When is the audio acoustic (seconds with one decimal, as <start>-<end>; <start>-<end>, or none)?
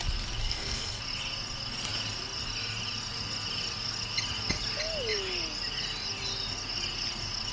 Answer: 0.0-0.4; 1.0-7.5